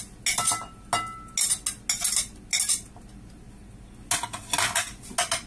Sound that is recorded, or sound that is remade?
recorded